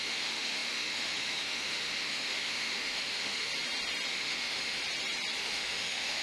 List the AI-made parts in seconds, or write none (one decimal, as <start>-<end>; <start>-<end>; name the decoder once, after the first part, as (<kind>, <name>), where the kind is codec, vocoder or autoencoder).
0.0-3.5 (autoencoder, DAC-VAE); 4.1-4.8; 5.4-6.2